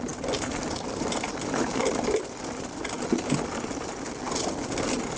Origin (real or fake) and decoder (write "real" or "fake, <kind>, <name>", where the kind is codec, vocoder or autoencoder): real